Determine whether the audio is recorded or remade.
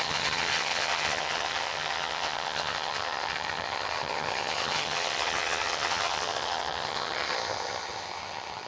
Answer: remade